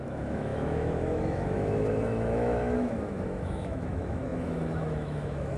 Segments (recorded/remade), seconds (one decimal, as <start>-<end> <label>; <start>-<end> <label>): 0.0-5.6 remade